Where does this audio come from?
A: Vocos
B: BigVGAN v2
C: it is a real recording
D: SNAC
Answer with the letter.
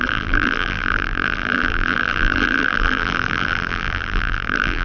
B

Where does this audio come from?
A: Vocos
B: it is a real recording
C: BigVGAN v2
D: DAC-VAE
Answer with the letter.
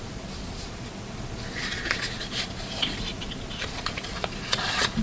A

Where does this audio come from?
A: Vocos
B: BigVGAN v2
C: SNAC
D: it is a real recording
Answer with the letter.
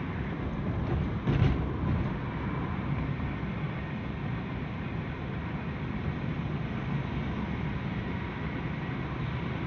D